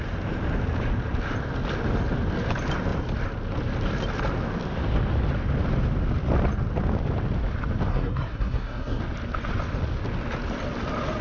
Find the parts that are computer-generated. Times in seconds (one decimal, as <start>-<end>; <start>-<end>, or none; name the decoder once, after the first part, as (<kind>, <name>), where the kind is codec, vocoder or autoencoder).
7.9-9.0 (codec, SNAC)